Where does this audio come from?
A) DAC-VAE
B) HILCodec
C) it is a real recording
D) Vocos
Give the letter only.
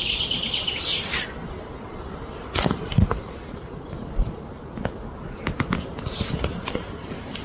C